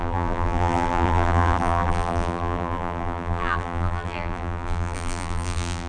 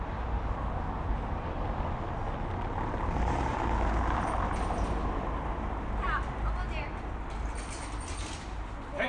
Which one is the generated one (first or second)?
first